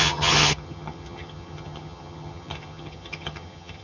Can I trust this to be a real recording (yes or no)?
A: no